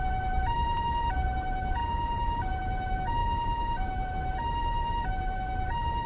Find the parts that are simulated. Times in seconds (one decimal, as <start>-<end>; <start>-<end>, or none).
1.8-2.4; 3.2-4.1